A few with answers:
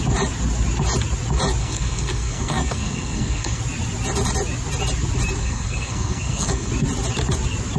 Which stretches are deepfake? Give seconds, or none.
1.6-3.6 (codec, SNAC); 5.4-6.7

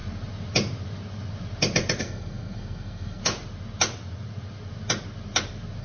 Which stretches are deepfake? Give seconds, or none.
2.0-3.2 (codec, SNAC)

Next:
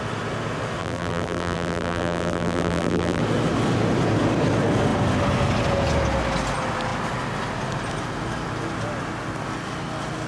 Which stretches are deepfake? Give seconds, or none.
0.8-3.2 (vocoder, BigVGAN v2)

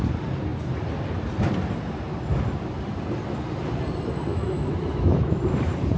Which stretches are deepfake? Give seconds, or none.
4.3-5.4 (autoencoder, DAC-VAE)